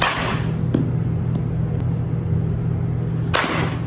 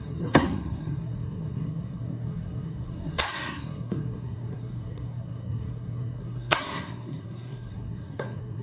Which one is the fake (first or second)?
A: second